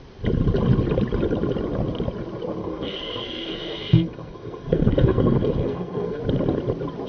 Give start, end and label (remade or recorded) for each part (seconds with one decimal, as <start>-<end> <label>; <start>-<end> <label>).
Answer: 0.0-2.6 recorded; 2.6-6.2 remade; 6.2-7.1 recorded

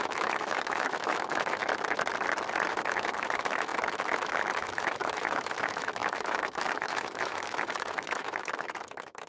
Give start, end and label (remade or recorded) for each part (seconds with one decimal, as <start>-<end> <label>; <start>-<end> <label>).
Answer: 0.0-1.6 remade; 1.6-2.7 recorded; 2.7-9.3 remade

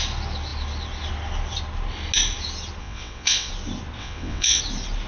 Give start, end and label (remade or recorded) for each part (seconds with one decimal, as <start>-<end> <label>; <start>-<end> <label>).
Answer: 0.0-2.8 recorded; 2.8-3.5 remade; 3.5-4.0 recorded; 4.0-4.6 remade; 4.6-5.1 recorded

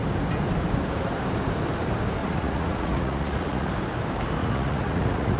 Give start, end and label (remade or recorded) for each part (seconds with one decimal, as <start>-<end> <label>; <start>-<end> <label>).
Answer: 0.0-2.2 recorded; 2.2-3.7 remade; 3.7-4.4 recorded; 4.4-5.4 remade

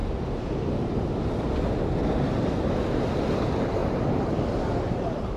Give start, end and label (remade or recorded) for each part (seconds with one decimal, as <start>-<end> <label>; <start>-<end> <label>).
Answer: 0.0-3.8 recorded; 3.8-4.4 remade; 4.4-5.4 recorded

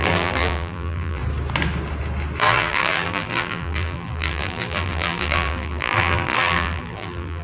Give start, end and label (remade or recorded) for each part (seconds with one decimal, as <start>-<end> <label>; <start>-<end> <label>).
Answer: 0.0-1.2 remade; 1.2-2.4 recorded; 2.4-7.4 remade

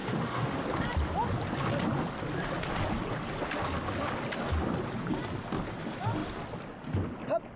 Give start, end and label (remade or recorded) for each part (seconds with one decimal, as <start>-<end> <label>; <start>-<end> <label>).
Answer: 0.0-0.5 remade; 0.5-7.6 recorded

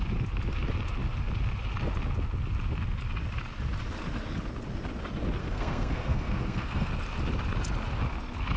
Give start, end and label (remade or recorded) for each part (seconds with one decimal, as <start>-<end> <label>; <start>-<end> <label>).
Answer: 0.0-5.4 recorded; 5.4-6.9 remade; 6.9-8.6 recorded